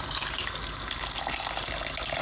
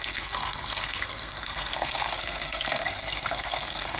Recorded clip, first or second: first